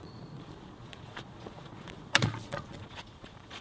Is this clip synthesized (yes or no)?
yes